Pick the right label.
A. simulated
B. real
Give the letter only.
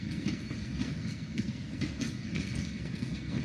A